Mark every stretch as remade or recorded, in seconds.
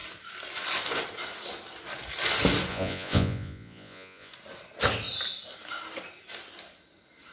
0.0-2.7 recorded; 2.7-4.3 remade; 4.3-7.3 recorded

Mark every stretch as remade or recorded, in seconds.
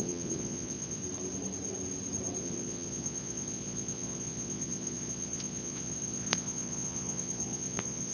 0.0-1.0 remade; 1.0-2.4 recorded; 2.4-8.1 remade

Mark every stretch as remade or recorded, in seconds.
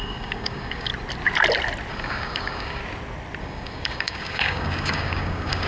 0.0-0.9 remade; 0.9-1.9 recorded; 1.9-2.8 remade; 2.8-3.4 recorded; 3.4-5.7 remade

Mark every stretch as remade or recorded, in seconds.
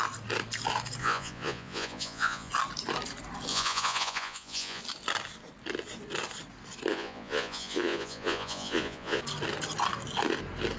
0.0-1.0 recorded; 1.0-2.5 remade; 2.5-3.5 recorded; 3.5-4.8 remade; 4.8-6.9 recorded; 6.9-9.2 remade; 9.2-10.8 recorded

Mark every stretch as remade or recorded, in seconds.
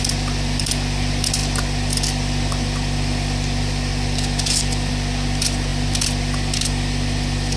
0.0-7.6 recorded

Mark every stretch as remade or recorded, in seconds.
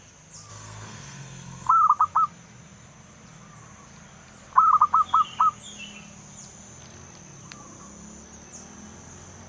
0.0-0.5 recorded; 0.5-1.7 remade; 1.7-9.5 recorded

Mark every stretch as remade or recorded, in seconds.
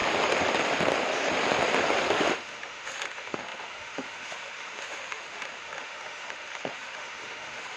0.0-2.0 recorded; 2.0-7.8 remade